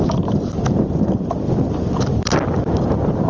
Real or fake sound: real